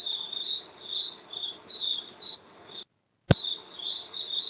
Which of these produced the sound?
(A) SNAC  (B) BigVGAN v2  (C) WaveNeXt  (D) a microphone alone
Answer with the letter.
D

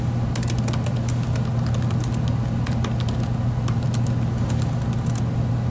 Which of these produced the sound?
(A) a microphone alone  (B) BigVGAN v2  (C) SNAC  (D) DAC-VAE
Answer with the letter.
A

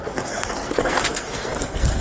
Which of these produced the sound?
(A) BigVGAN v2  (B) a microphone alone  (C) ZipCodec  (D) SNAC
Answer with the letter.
D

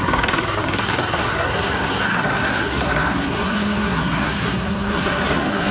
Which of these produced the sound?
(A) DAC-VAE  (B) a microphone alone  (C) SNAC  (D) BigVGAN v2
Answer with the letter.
C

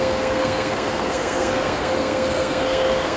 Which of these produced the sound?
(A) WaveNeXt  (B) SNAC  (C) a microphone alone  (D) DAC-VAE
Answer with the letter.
B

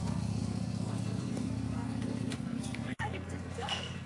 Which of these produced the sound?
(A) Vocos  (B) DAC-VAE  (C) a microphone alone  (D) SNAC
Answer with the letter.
D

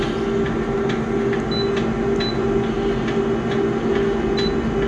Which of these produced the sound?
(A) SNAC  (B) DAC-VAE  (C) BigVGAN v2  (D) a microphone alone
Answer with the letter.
D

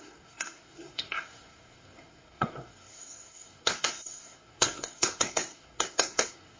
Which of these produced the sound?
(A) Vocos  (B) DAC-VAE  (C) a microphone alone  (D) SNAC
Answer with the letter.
D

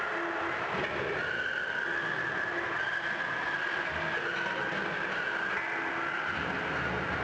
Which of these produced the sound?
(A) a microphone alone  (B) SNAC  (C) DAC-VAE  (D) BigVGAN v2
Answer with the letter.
A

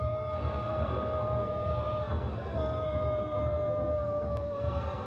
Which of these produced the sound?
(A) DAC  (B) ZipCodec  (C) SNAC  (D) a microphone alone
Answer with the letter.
C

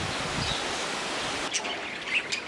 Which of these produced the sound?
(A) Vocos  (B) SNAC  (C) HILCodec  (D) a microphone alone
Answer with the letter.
D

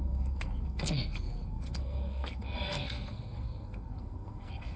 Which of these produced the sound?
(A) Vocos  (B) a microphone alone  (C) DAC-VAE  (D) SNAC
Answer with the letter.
D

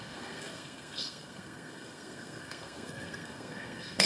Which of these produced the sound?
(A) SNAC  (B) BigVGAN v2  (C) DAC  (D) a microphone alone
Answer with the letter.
A